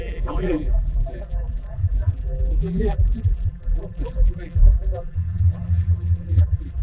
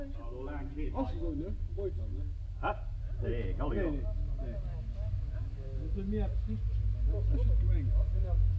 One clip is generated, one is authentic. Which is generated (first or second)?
first